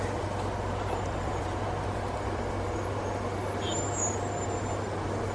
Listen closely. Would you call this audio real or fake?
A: real